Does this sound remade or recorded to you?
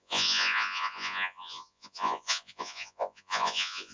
remade